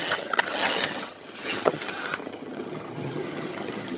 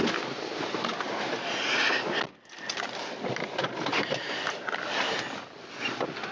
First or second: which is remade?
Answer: first